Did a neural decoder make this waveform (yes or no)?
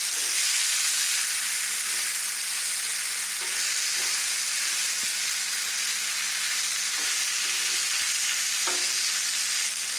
no